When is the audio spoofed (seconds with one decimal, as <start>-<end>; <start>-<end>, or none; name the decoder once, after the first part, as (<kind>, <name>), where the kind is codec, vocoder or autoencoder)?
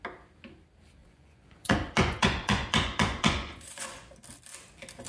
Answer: 1.0-4.1 (vocoder, Vocos)